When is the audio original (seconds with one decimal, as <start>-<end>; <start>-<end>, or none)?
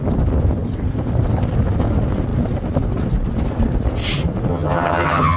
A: 0.0-4.5